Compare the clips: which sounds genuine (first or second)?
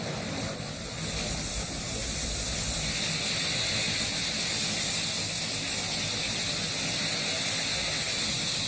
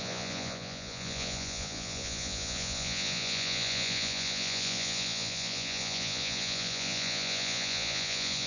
first